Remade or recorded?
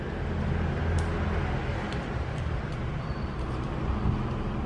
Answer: recorded